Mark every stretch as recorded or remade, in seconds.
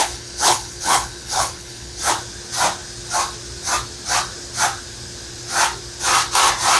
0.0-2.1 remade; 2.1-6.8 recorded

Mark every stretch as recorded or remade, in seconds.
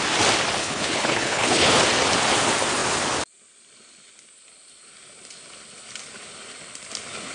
0.0-0.6 recorded; 0.6-1.8 remade; 1.8-7.3 recorded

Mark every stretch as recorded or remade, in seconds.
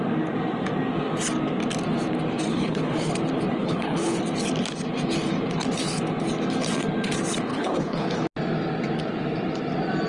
0.0-2.5 recorded; 2.5-3.1 remade; 3.1-3.6 recorded; 3.6-4.2 remade; 4.2-7.5 recorded; 7.5-8.2 remade; 8.2-10.1 recorded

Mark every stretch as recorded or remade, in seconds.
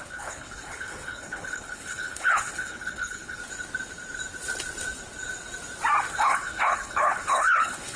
0.0-3.4 remade; 3.4-6.1 recorded; 6.1-8.0 remade